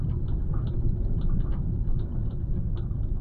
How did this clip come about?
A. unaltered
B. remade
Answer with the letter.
A